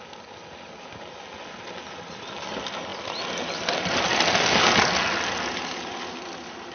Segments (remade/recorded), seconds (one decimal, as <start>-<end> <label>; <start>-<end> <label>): 0.0-6.7 recorded